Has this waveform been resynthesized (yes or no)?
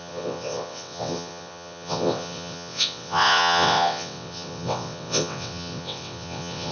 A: yes